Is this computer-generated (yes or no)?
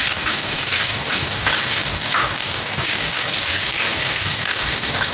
yes